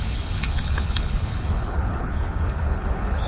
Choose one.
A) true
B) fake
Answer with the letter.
B